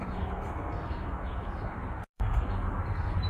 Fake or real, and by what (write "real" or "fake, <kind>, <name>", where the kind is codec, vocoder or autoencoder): fake, codec, SNAC